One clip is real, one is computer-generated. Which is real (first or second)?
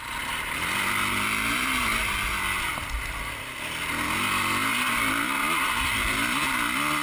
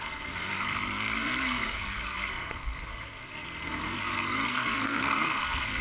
first